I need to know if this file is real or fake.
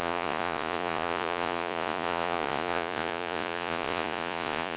fake